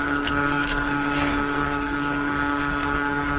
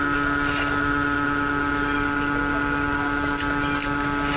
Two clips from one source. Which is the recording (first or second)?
second